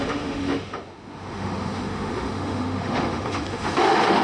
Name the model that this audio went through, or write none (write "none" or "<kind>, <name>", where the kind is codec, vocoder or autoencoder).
autoencoder, DAC-VAE